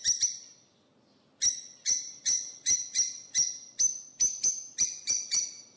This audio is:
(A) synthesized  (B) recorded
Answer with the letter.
B